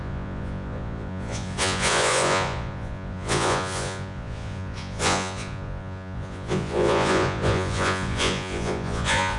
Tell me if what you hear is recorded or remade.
remade